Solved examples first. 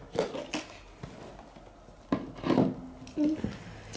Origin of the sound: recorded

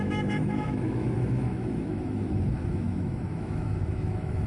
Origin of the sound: remade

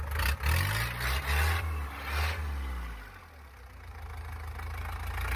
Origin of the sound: recorded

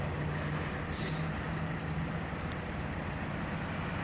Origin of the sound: recorded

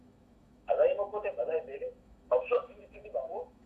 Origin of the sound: remade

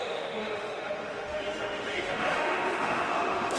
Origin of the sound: remade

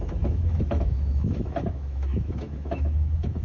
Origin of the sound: remade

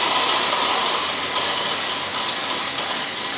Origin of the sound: recorded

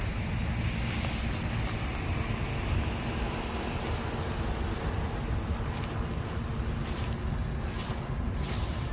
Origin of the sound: recorded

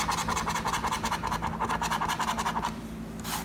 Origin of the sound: recorded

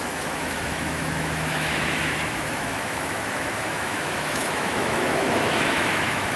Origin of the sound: remade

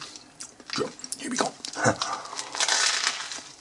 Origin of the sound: recorded